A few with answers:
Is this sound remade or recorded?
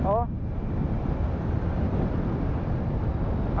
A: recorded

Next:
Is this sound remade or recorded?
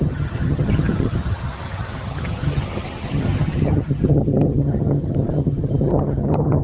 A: remade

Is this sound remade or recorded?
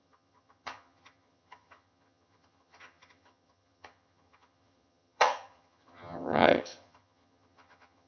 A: remade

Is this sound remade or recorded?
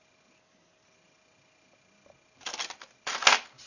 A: recorded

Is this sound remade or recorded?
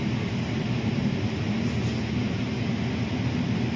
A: recorded